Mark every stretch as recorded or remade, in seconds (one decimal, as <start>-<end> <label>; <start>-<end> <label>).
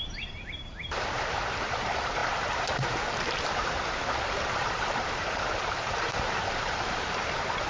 0.0-7.7 remade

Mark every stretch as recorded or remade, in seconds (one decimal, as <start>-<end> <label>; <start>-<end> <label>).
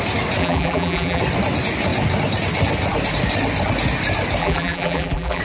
0.0-0.4 recorded; 0.4-1.2 remade; 1.2-4.4 recorded; 4.4-5.4 remade